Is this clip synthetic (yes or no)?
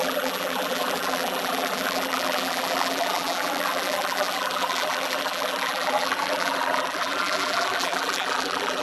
yes